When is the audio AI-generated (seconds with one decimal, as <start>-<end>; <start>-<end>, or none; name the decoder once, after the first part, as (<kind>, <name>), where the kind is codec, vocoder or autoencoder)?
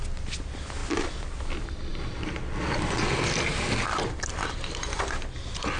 none